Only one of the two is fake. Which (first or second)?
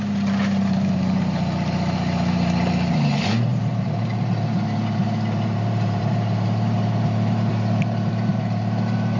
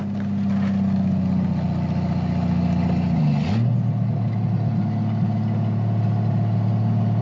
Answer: first